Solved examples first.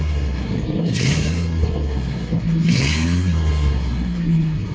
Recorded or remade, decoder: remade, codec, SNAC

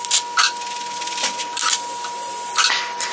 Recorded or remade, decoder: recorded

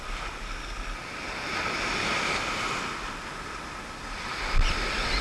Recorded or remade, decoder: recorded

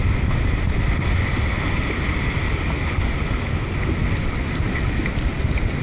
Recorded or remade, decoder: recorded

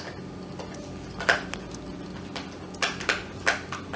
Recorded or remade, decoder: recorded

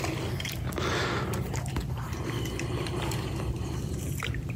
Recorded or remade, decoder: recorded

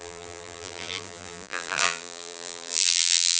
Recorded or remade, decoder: remade, vocoder, BigVGAN v2